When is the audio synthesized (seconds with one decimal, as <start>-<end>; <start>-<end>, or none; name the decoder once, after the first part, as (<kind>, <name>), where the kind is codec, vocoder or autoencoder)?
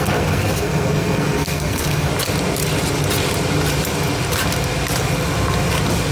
0.0-2.1 (codec, SNAC)